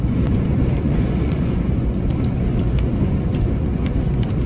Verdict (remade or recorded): remade